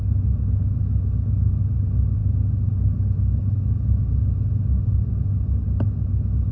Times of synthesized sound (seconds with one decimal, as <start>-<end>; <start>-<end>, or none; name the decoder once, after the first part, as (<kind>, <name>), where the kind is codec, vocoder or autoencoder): none